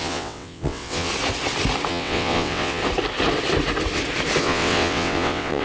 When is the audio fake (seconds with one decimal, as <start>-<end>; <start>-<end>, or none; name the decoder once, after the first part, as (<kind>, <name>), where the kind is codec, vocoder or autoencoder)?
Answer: 0.0-1.1 (vocoder, WaveNeXt); 1.9-2.8; 4.4-5.6